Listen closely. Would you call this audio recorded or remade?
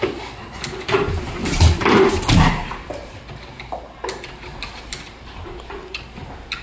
recorded